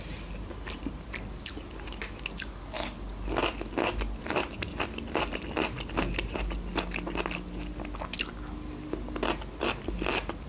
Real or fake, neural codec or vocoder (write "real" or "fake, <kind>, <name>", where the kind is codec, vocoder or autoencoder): real